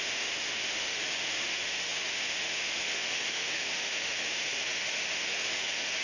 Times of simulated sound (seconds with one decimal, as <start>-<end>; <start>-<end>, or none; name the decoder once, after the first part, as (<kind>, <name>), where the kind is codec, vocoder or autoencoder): 0.0-6.0 (autoencoder, DAC-VAE)

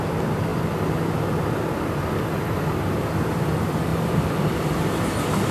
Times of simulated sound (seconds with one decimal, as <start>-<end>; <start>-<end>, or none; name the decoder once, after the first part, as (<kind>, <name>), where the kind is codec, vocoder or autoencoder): none

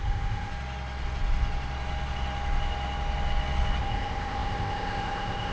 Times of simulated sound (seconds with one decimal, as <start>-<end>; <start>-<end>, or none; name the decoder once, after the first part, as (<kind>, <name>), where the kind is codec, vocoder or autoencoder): 0.0-0.5 (codec, ZipCodec); 3.8-5.5

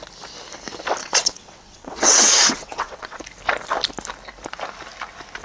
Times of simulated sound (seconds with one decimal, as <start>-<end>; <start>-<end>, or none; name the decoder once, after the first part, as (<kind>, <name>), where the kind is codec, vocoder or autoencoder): 1.0-3.2 (vocoder, WaveNeXt)

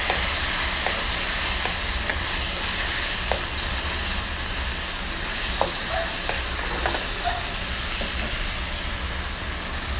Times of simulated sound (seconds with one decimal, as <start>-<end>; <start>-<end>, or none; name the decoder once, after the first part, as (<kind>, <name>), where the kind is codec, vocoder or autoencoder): none

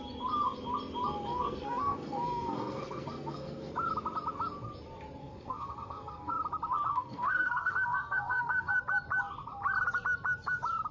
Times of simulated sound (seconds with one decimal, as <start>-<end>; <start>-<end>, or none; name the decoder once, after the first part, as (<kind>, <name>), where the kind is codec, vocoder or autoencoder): 1.3-3.7 (codec, SNAC); 5.2-6.3; 6.9-8.7